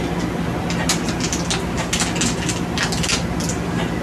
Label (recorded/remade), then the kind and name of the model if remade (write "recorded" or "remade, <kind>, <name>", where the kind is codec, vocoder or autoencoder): recorded